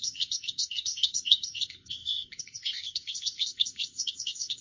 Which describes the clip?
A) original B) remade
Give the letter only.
B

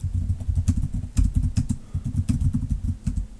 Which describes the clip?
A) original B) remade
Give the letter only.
A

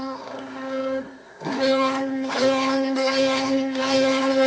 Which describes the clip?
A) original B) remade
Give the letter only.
B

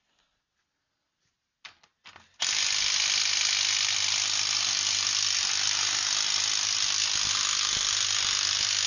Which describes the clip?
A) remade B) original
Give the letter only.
B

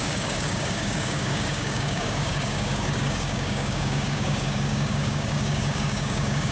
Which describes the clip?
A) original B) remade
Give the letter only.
B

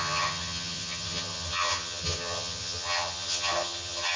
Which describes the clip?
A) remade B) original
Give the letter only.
A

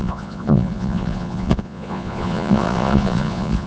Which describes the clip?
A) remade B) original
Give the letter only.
A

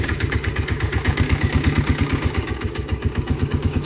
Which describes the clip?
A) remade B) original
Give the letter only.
A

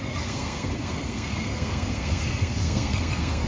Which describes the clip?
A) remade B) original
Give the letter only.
A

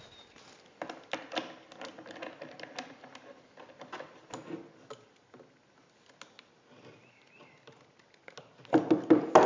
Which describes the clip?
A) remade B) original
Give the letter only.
B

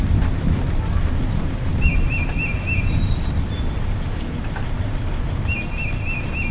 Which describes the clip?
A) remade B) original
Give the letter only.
B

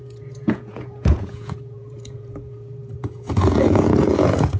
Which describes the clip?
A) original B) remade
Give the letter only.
B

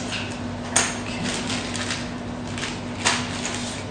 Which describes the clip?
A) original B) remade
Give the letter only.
A